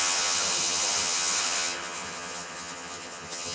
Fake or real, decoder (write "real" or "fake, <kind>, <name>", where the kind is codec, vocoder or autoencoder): fake, vocoder, HiFi-GAN